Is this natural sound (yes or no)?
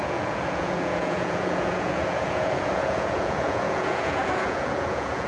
no